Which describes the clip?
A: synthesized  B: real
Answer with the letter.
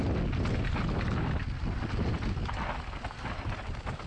B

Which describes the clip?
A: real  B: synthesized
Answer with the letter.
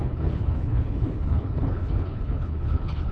B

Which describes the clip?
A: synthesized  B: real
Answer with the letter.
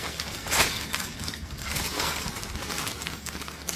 A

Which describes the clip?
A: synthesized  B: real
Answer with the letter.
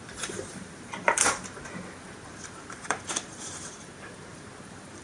A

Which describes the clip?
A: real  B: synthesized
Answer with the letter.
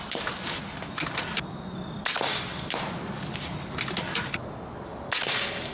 A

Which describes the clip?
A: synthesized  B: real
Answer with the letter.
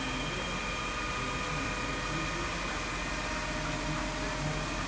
B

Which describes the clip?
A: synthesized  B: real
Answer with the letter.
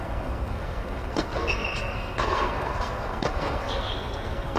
A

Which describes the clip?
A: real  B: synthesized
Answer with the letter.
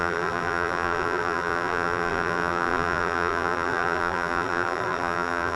B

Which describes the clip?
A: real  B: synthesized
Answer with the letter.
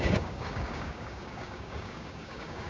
B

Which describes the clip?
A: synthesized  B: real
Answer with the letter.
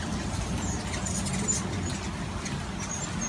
B